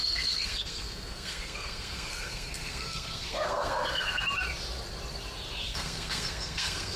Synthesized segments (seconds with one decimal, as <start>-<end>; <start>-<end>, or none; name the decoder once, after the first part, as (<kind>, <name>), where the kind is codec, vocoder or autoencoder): 0.0-4.2 (codec, SNAC); 5.6-7.0